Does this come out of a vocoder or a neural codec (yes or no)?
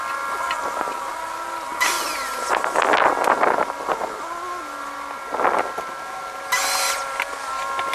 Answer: no